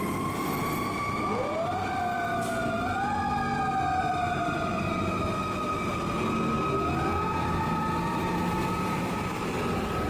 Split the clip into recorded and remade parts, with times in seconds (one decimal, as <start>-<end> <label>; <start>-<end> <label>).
0.0-4.0 recorded; 4.0-4.9 remade; 4.9-10.1 recorded